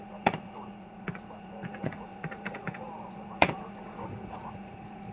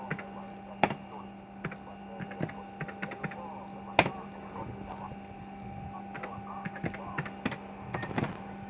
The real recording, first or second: second